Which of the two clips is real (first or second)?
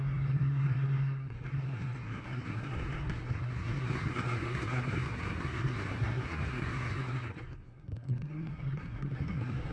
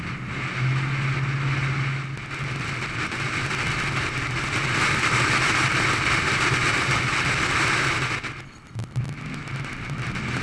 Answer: second